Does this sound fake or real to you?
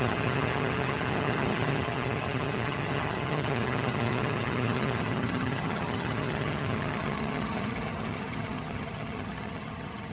fake